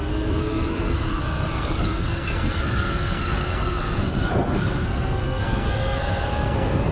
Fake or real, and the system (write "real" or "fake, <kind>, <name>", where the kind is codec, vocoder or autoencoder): fake, codec, SNAC